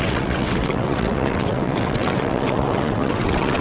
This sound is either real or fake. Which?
fake